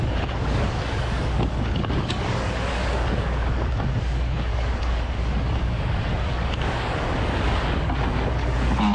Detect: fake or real fake